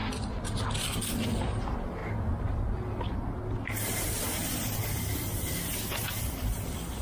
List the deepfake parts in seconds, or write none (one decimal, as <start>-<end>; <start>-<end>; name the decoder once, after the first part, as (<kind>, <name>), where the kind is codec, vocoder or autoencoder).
1.4-2.0 (vocoder, BigVGAN v2); 6.2-7.0